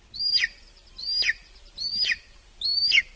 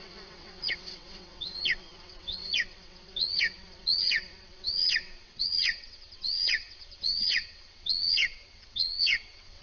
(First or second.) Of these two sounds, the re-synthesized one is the second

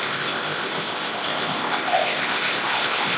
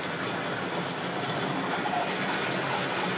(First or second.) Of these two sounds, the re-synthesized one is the first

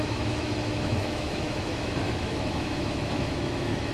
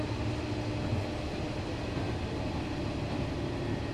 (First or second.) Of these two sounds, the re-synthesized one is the first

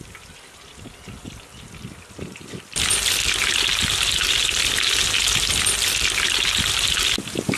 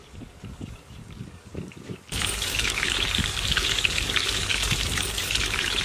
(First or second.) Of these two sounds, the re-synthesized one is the second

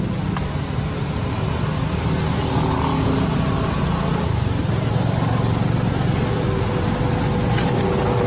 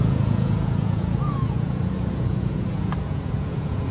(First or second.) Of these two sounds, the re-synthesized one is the second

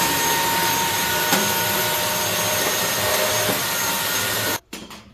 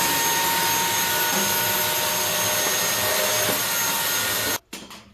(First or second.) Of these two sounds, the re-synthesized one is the first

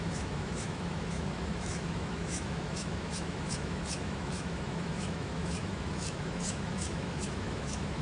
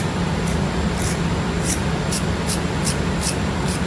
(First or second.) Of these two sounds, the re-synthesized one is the first